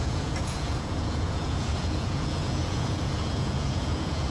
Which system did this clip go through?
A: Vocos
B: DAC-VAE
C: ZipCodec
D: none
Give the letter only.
A